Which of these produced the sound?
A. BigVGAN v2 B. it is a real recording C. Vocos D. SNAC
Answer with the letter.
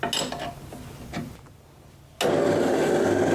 B